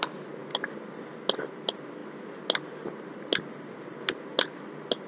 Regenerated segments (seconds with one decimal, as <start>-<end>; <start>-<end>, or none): none